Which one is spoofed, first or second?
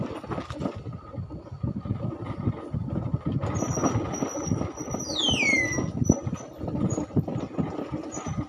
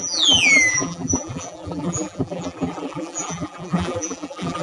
second